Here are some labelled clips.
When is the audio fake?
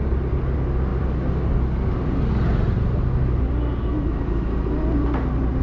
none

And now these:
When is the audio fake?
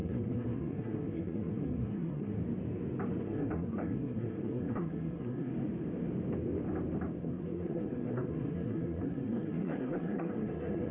0.0-2.4 (codec, SNAC); 3.2-5.5; 7.2-10.9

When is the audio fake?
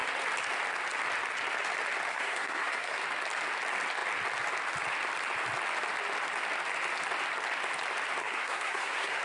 2.1-3.0 (codec, SNAC); 8.2-9.2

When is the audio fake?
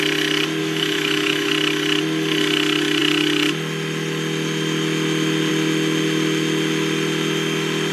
0.6-1.5 (autoencoder, DAC-VAE)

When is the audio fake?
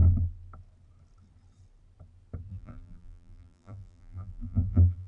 2.5-5.1 (vocoder, BigVGAN v2)